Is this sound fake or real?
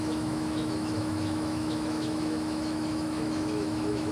fake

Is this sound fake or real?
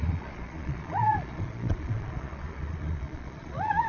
fake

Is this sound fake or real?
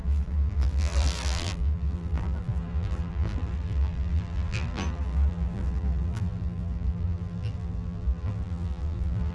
fake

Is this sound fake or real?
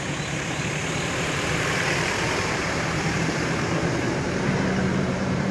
fake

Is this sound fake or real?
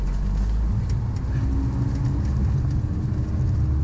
real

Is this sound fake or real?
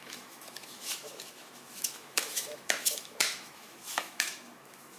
fake